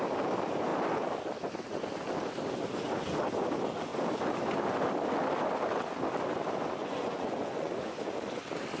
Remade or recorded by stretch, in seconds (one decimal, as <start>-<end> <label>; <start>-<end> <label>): 0.0-6.8 recorded; 6.8-8.0 remade; 8.0-8.8 recorded